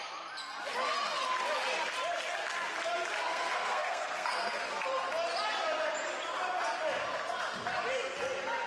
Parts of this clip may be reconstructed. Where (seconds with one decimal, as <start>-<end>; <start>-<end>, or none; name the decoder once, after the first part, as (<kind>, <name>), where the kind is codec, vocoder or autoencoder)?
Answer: 3.3-4.6 (codec, SNAC)